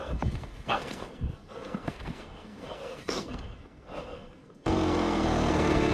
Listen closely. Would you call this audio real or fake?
fake